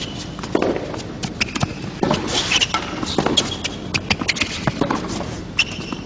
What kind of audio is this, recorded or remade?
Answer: recorded